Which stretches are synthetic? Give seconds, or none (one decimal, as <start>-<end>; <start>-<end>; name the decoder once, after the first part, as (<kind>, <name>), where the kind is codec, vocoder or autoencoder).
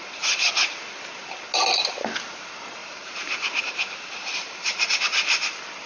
2.8-5.0 (vocoder, BigVGAN v2)